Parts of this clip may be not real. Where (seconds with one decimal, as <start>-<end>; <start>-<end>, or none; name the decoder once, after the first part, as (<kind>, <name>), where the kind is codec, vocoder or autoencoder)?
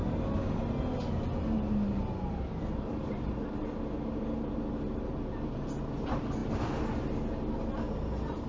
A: none